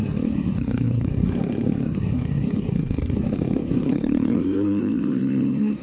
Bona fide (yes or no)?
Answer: no